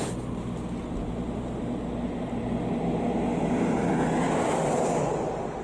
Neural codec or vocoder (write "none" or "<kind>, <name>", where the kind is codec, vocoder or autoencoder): none